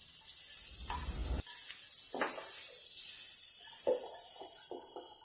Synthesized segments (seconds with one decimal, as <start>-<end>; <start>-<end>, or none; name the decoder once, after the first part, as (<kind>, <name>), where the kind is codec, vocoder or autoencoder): none